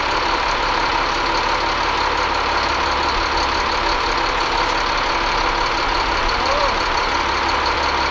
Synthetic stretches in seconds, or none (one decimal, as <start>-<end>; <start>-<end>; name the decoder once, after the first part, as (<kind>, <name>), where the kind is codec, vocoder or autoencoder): 0.0-0.9 (vocoder, BigVGAN v2); 5.7-8.1